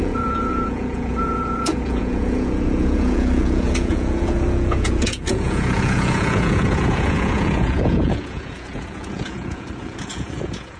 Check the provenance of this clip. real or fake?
fake